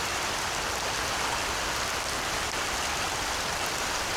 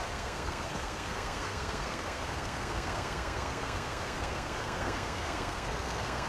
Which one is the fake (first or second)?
second